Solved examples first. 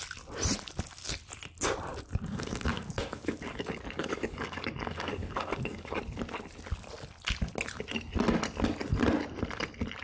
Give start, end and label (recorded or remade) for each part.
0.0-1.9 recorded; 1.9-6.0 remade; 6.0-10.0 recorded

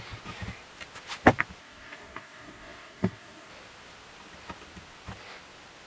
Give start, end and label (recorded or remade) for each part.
0.0-1.6 recorded; 1.6-3.5 remade; 3.5-5.9 recorded

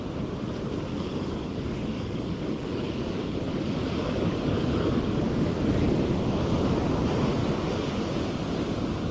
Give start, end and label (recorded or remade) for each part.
0.0-0.9 recorded; 0.9-6.0 remade; 6.0-7.4 recorded; 7.4-8.1 remade; 8.1-9.1 recorded